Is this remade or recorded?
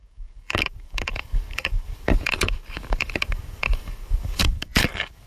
remade